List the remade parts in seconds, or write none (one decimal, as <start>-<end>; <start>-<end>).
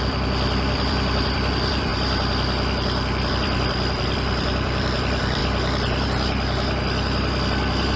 0.0-1.9; 3.3-5.4